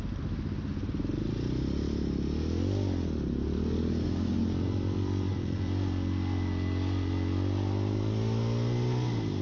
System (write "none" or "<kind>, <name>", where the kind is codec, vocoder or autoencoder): none